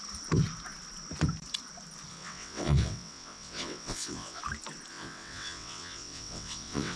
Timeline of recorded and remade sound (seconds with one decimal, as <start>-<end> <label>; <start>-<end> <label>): 0.0-2.1 recorded; 2.1-4.4 remade; 4.4-4.9 recorded; 4.9-7.0 remade